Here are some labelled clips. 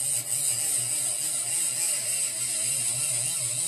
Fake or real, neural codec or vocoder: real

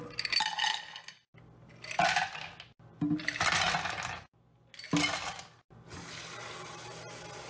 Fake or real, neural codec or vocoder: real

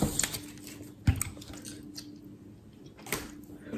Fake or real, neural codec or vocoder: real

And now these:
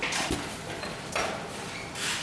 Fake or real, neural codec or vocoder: real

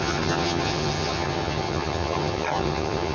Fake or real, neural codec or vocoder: fake, vocoder, HiFi-GAN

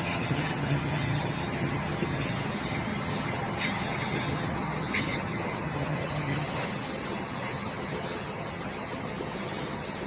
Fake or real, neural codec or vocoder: fake, vocoder, HiFi-GAN